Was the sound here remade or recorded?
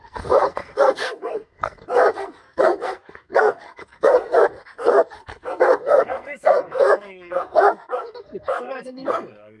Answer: remade